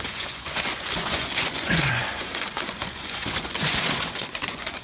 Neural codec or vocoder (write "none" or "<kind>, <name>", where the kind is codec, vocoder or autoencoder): vocoder, Vocos